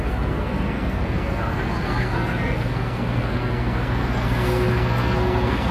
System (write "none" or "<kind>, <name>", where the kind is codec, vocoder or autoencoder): codec, SNAC